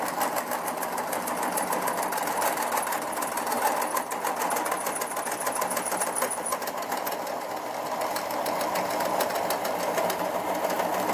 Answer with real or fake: real